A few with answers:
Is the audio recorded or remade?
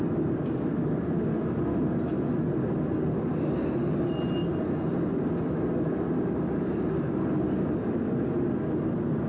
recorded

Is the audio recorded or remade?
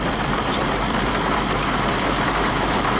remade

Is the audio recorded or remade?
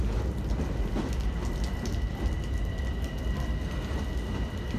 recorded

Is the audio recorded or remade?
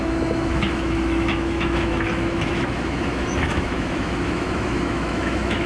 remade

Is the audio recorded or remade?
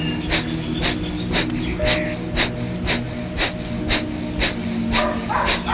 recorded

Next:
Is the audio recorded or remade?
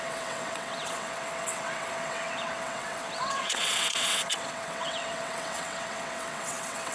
remade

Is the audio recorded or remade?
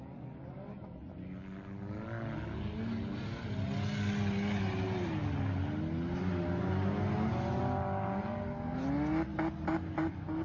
recorded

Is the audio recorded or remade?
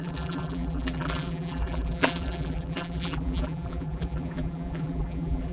remade